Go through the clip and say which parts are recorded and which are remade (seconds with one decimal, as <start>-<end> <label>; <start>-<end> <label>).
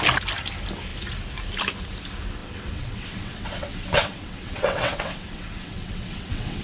0.0-2.4 recorded; 2.4-6.6 remade